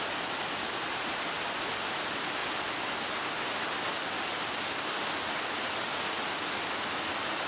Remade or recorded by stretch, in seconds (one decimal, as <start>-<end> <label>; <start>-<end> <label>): 0.0-7.5 recorded